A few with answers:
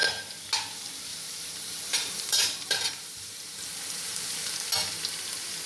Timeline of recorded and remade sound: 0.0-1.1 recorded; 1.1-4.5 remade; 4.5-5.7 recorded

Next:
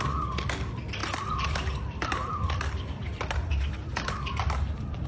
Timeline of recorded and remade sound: 0.0-1.0 recorded; 1.0-4.1 remade; 4.1-5.1 recorded

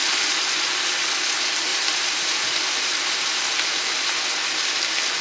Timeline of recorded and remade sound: 0.0-1.7 recorded; 1.7-4.2 remade; 4.2-5.2 recorded

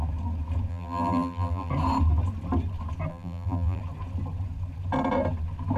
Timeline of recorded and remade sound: 0.0-0.7 recorded; 0.7-1.7 remade; 1.7-3.1 recorded; 3.1-3.8 remade; 3.8-5.8 recorded

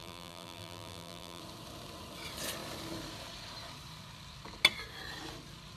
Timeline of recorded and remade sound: 0.0-1.4 remade; 1.4-5.8 recorded

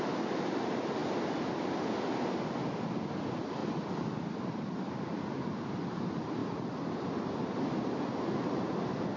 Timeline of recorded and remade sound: 0.0-3.6 recorded; 3.6-5.2 remade; 5.2-9.2 recorded

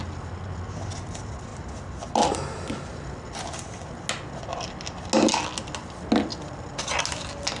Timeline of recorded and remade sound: 0.0-6.3 recorded; 6.3-7.0 remade; 7.0-7.6 recorded

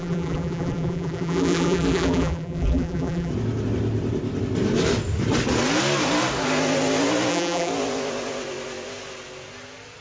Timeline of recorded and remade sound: 0.0-3.3 remade; 3.3-7.3 recorded; 7.3-7.7 remade; 7.7-10.0 recorded